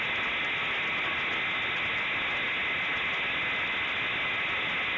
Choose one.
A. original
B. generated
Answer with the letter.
A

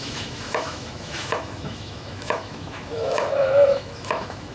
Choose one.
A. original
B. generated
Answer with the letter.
B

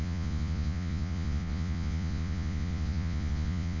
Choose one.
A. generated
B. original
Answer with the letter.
A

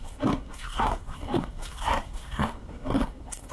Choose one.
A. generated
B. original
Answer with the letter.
A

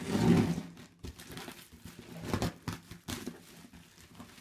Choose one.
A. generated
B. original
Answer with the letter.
B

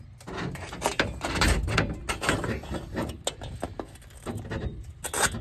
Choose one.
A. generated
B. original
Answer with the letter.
B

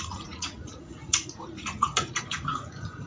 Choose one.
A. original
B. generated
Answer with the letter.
B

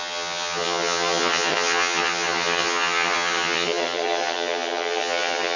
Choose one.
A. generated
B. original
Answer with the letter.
A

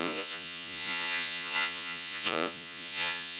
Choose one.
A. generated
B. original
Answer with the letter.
A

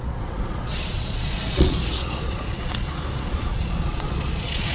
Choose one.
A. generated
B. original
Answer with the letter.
A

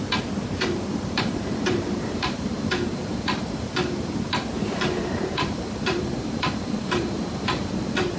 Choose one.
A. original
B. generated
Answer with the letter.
B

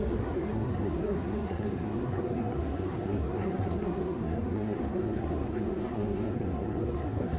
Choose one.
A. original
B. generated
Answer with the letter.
B